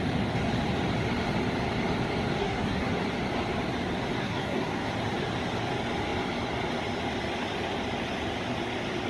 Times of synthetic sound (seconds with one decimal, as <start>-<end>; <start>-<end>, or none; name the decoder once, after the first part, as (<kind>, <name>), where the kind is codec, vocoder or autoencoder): 2.4-3.0 (codec, SNAC); 4.2-4.9